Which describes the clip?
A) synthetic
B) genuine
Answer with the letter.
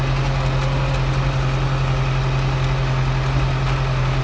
B